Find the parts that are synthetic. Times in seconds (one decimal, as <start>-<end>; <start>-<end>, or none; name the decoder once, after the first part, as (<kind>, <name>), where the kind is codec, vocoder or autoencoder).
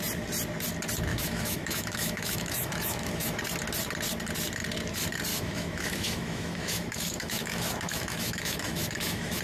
1.1-3.4 (autoencoder, DAC-VAE); 5.3-9.4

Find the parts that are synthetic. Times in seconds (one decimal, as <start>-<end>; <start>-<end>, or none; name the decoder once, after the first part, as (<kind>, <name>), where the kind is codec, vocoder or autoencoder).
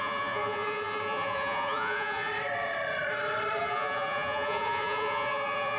0.0-2.3 (vocoder, Vocos); 3.6-5.8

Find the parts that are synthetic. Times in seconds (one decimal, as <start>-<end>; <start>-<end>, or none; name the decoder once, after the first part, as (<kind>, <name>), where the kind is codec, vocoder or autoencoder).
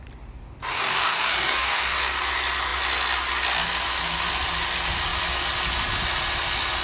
0.7-2.0 (codec, DAC)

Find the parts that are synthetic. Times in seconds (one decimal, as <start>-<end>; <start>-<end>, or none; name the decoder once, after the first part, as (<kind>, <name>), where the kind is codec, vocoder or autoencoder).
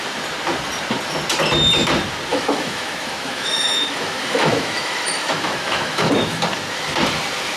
2.3-6.4 (autoencoder, DAC-VAE)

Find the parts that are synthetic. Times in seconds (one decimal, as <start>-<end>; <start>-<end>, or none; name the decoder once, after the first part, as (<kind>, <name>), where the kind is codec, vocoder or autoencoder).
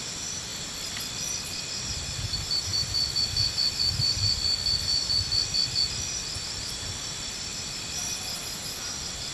none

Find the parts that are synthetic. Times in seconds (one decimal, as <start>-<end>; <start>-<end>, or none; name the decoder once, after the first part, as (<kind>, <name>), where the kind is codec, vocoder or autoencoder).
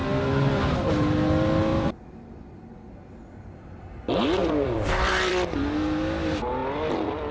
1.7-2.7 (vocoder, BigVGAN v2); 4.4-5.6; 6.6-7.3